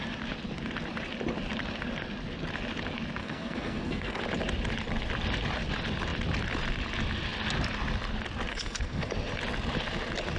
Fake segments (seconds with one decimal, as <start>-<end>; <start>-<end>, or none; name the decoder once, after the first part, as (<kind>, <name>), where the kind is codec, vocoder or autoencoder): 3.2-4.2 (codec, SNAC); 8.5-9.1